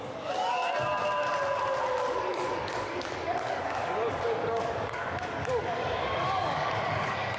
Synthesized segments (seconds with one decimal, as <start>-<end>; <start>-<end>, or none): 0.0-0.6; 1.9-7.4